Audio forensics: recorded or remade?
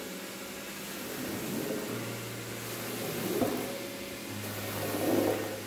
recorded